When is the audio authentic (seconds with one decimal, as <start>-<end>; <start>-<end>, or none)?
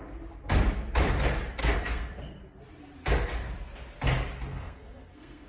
0.0-1.6; 2.2-4.5